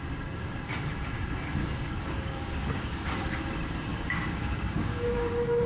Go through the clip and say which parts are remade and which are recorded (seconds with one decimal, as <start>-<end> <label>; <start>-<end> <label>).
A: 0.0-1.6 recorded; 1.6-3.1 remade; 3.1-3.9 recorded; 3.9-5.7 remade